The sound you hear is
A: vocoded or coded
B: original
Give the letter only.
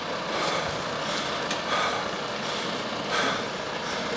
B